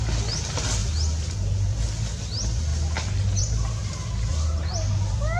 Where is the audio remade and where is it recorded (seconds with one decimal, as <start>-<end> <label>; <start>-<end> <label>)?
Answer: 0.0-2.7 recorded; 2.7-3.4 remade; 3.4-3.8 recorded; 3.8-4.9 remade; 4.9-5.4 recorded